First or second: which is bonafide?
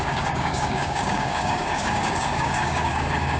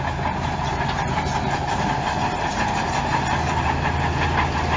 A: second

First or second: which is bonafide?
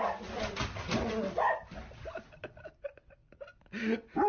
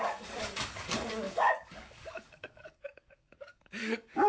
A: first